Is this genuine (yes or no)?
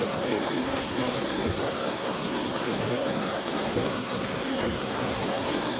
no